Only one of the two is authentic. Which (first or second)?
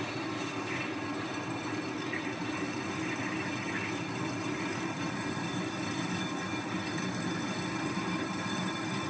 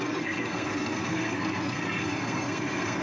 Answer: first